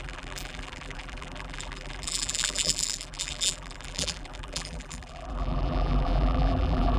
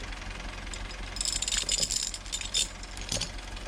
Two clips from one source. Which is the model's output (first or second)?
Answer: first